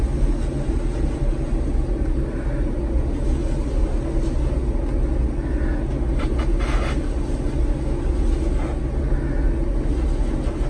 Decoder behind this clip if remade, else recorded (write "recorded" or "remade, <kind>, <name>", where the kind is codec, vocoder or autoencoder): recorded